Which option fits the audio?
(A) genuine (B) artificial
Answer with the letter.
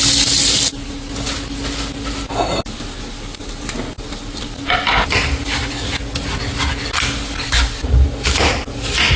A